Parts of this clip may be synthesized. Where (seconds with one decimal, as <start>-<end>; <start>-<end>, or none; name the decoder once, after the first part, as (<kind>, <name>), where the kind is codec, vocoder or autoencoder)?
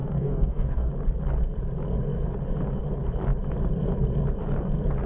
0.0-0.9 (codec, DAC)